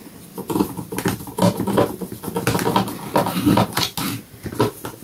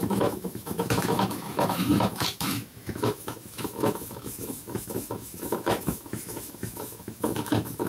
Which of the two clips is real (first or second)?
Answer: first